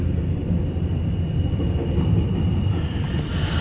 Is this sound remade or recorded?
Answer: recorded